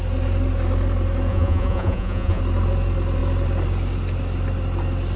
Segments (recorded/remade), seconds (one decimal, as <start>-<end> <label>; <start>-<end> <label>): 0.0-1.3 recorded; 1.3-2.4 remade; 2.4-5.2 recorded